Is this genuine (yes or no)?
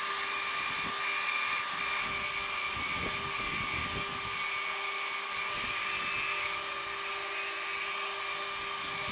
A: yes